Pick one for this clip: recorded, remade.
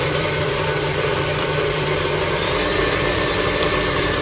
remade